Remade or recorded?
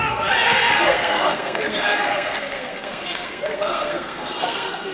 remade